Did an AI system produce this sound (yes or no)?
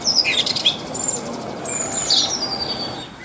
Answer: no